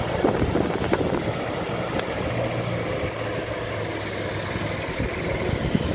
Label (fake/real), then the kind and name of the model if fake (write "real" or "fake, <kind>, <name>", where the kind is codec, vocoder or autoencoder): real